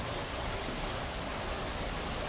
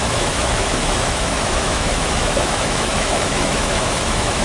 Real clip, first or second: first